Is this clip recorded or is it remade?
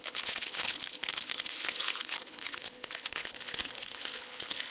remade